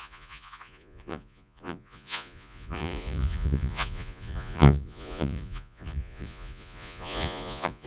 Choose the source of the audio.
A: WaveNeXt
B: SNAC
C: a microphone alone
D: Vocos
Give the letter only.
D